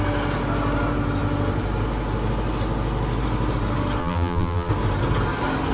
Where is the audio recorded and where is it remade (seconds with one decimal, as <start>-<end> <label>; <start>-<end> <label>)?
0.0-4.0 recorded; 4.0-4.7 remade; 4.7-5.7 recorded